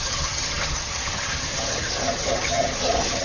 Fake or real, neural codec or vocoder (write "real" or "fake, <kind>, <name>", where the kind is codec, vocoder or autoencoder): fake, vocoder, HiFi-GAN